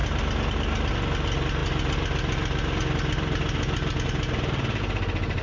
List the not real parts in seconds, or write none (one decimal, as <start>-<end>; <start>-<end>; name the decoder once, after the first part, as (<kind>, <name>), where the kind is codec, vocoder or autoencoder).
0.0-0.9 (vocoder, BigVGAN v2)